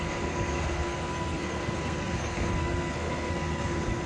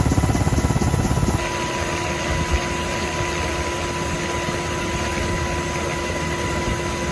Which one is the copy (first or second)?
first